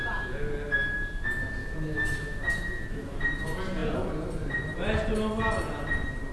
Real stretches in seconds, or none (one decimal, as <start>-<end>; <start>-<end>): 0.0-1.6; 3.2-6.3